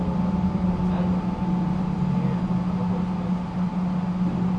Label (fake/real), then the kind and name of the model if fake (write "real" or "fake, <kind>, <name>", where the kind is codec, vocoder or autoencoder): real